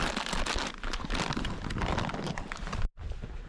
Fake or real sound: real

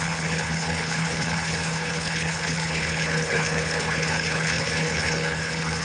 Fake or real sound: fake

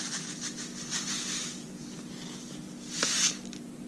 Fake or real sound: real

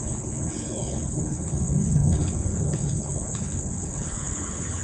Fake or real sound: fake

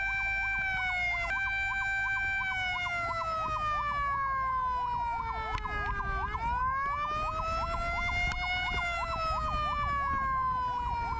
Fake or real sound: real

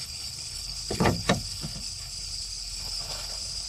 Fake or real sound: fake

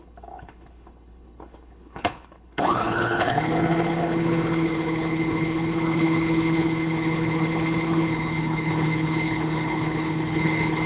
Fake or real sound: fake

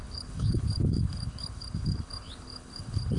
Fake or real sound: fake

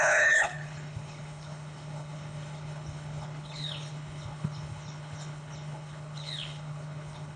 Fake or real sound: fake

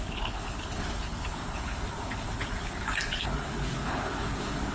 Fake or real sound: fake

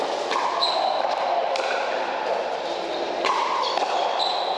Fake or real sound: real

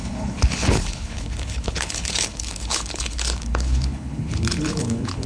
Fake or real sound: fake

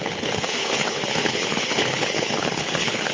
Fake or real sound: fake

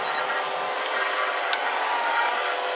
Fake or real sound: real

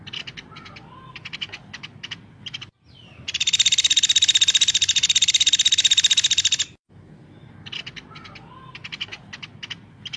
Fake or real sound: real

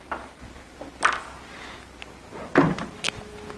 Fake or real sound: real